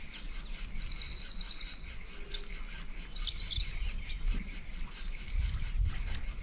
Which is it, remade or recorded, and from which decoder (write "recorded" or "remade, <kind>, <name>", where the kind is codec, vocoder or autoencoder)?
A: recorded